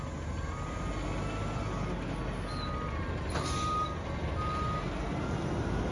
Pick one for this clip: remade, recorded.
recorded